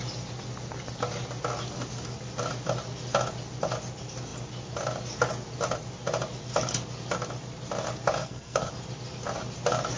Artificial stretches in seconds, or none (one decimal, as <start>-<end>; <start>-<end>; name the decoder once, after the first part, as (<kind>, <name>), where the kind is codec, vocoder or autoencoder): 8.2-8.7 (codec, SNAC)